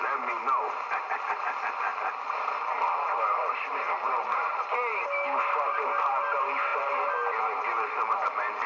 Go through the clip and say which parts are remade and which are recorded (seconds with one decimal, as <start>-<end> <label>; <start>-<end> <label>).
0.0-8.7 recorded

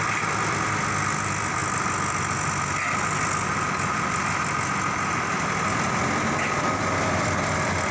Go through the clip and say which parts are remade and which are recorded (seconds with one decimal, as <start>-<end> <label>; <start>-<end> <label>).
0.0-7.9 recorded

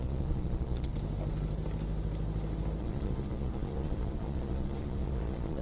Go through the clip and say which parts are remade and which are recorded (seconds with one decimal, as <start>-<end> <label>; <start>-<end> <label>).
0.0-0.9 remade; 0.9-2.8 recorded; 2.8-5.6 remade